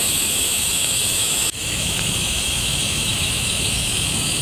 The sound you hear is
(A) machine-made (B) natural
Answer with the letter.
A